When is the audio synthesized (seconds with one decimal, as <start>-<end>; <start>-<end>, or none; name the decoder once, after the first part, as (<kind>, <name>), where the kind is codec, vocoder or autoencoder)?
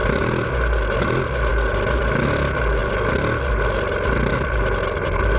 2.8-5.4 (vocoder, BigVGAN v2)